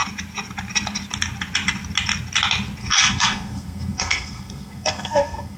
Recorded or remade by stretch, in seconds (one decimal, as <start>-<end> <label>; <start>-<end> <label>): 0.0-2.8 recorded; 2.8-5.6 remade